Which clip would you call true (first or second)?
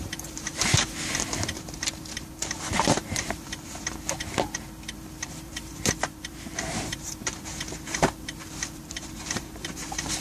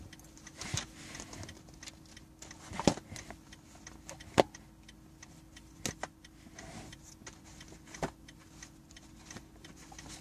second